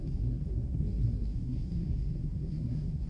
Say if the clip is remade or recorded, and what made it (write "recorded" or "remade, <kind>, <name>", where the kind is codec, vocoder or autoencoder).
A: remade, codec, SNAC